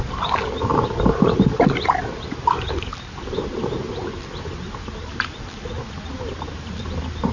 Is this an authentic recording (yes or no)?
yes